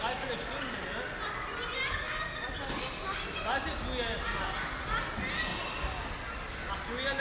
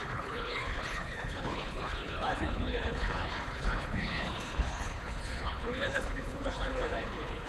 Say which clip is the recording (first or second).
first